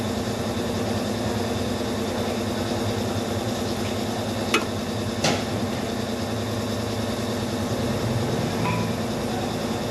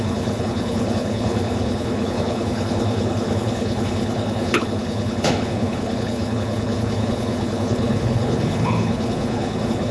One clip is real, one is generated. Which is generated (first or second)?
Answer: second